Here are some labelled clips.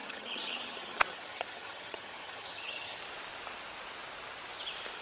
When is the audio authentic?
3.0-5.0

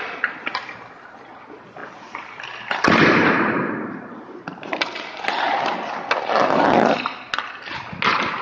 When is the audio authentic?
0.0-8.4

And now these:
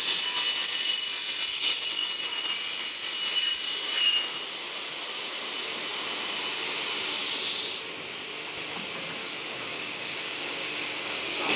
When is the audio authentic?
0.0-1.5; 2.1-9.2

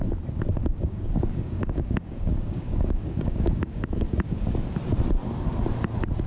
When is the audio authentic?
0.0-0.6; 4.4-6.3

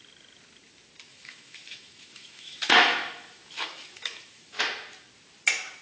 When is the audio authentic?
0.0-1.1; 4.6-5.8

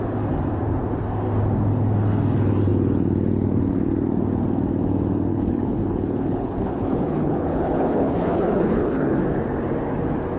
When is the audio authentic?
0.0-5.3; 9.2-10.4